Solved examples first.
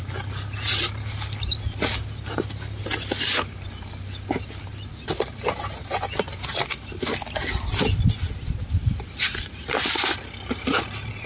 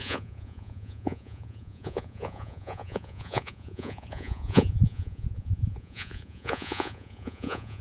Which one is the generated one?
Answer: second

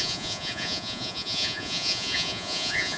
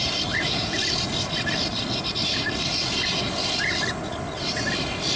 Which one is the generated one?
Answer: first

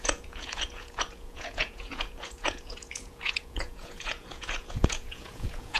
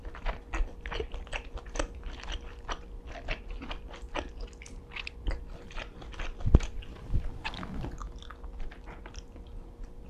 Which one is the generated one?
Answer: first